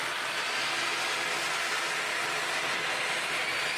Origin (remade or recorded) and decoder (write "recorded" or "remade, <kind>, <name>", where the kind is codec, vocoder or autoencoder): recorded